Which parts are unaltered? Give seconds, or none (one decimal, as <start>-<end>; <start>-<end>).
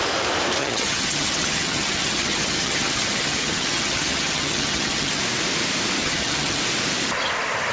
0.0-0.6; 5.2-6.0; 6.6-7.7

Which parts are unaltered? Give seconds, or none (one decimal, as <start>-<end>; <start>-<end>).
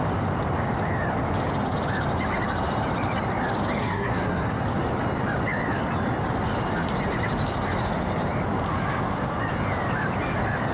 0.0-3.8; 4.6-10.7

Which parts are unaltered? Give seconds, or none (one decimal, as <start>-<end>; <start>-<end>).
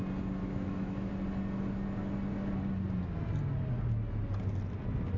0.0-0.4; 1.1-5.2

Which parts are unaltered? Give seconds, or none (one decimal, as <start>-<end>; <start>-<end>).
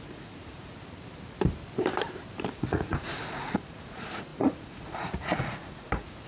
0.7-2.5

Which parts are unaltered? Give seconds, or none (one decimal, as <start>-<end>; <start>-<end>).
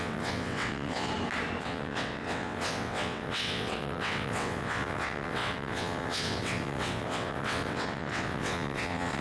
1.1-1.6